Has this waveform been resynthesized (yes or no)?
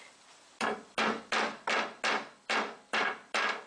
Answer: no